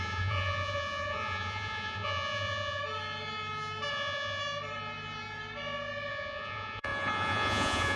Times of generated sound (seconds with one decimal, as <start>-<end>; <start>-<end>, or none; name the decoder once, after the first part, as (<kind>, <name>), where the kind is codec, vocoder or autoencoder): 0.0-2.8 (vocoder, Vocos); 3.9-4.4; 6.1-8.0